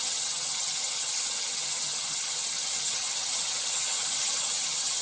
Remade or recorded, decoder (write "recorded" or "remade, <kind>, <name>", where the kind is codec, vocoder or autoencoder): remade, vocoder, HiFi-GAN